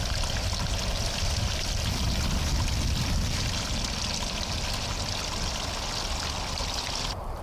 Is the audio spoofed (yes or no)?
no